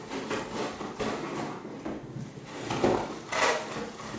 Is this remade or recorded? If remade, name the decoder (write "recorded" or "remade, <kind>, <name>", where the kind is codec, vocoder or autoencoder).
recorded